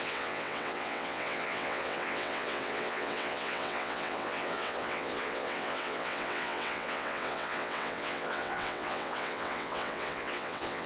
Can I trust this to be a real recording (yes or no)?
no